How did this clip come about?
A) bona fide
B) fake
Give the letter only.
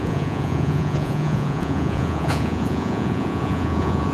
B